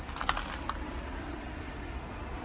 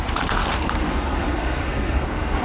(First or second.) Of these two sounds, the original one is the first